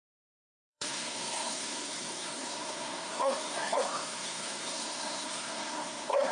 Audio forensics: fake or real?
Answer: fake